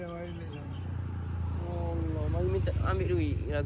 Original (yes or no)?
yes